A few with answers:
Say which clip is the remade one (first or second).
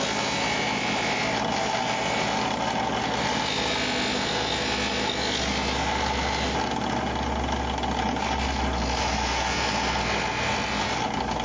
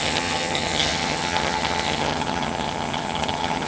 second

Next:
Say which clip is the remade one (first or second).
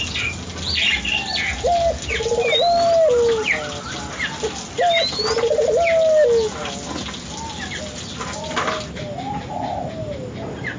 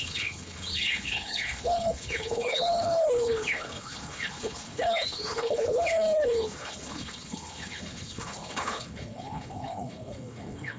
second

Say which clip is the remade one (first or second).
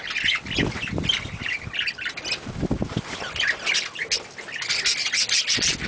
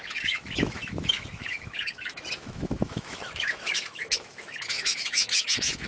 second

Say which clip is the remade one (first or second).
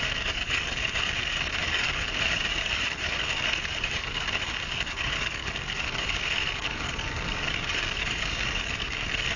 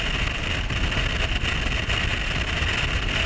first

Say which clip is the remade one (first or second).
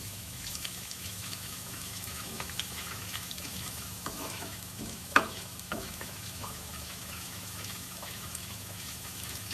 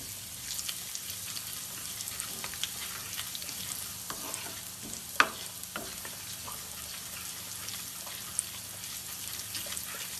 first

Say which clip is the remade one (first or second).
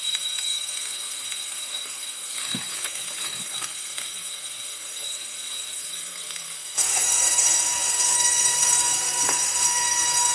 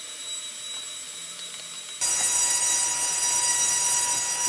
first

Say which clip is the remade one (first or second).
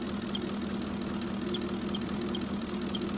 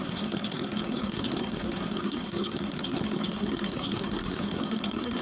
second